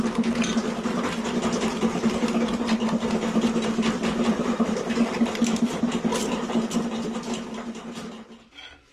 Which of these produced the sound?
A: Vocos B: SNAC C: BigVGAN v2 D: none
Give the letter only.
D